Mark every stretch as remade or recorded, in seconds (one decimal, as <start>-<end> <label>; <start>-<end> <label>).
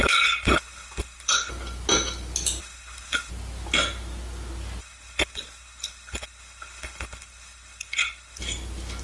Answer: 0.0-1.5 remade; 1.5-2.6 recorded; 2.6-3.3 remade; 3.3-4.8 recorded; 4.8-8.4 remade; 8.4-9.0 recorded